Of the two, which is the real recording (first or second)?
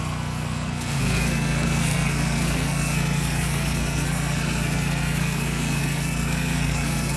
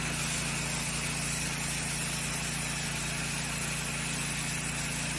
second